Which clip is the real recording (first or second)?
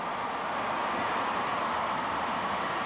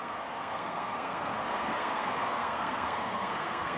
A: first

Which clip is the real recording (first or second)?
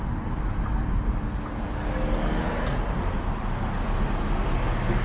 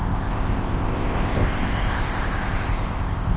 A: first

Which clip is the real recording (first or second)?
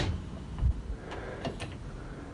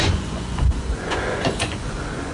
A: first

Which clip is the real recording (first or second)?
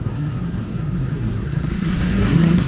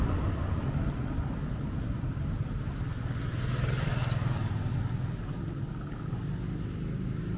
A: second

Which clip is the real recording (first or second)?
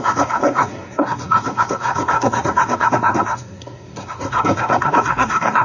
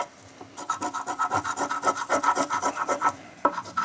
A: second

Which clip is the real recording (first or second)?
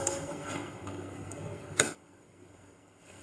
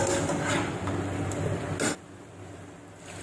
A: second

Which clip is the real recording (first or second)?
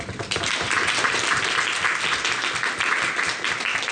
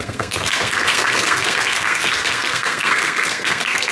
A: first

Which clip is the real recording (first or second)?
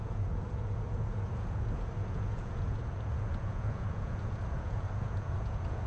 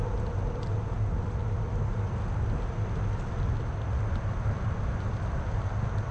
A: second